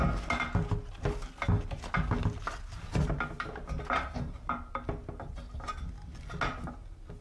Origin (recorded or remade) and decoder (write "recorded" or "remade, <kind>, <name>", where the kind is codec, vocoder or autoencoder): recorded